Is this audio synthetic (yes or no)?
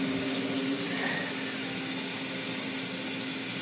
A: no